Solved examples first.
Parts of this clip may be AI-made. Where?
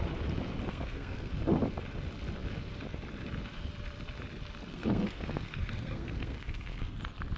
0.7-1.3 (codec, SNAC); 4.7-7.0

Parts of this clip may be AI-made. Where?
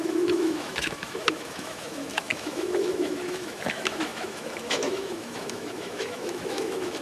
0.0-7.0 (autoencoder, DAC-VAE)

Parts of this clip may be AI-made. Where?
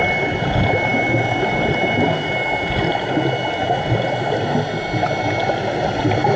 none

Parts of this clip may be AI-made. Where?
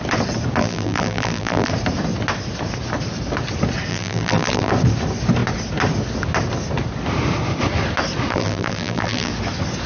0.6-1.7 (vocoder, BigVGAN v2); 3.9-4.7; 8.3-9.3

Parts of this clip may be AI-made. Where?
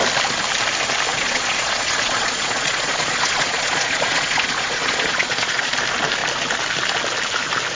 1.1-5.7 (vocoder, Vocos)